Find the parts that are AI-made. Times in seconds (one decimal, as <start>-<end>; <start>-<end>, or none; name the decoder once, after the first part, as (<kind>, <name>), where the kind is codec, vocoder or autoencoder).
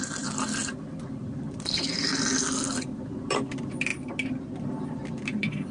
0.0-5.7 (vocoder, BigVGAN v2)